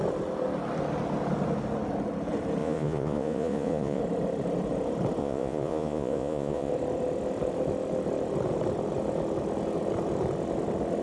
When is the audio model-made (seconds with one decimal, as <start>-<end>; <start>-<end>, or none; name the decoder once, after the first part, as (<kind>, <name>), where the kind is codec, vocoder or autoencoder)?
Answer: 2.6-4.0 (vocoder, Vocos); 5.2-6.7